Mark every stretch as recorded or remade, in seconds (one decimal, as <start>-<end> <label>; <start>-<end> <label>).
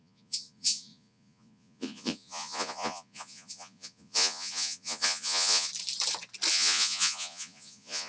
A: 0.0-5.7 remade; 5.7-6.5 recorded; 6.5-8.1 remade